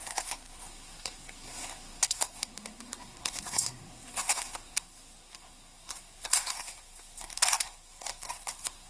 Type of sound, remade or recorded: remade